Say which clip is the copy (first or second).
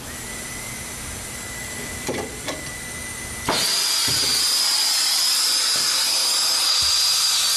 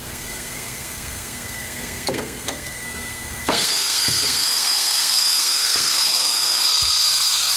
second